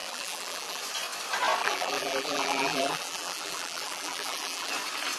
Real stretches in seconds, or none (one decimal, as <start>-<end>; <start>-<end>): 0.8-1.6; 4.7-5.2